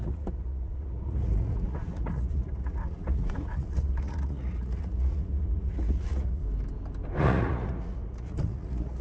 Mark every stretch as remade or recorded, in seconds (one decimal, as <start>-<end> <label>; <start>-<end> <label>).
0.0-6.4 remade; 6.4-7.2 recorded; 7.2-9.0 remade